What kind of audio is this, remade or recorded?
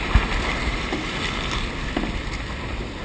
recorded